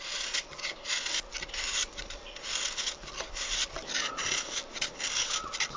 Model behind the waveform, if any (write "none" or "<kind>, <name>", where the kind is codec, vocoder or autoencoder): none